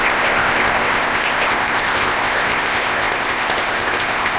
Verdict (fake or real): fake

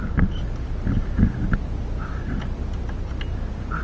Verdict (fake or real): real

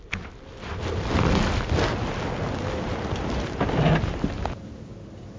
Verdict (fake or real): real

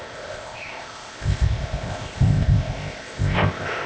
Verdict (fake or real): fake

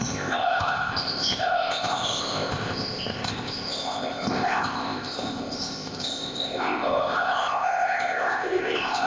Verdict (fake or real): fake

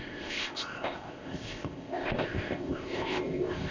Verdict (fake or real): fake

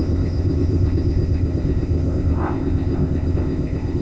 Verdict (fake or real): fake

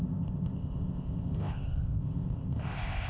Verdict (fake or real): fake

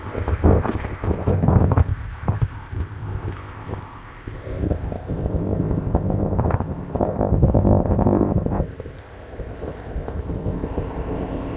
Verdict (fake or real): fake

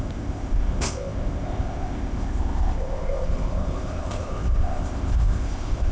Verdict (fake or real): fake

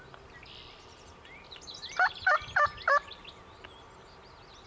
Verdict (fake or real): real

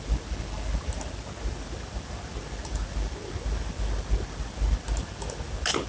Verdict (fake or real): real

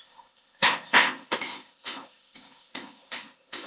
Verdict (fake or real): fake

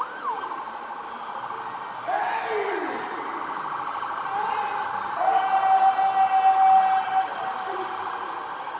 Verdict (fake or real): real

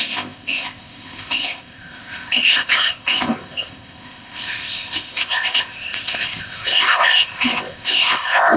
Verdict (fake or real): fake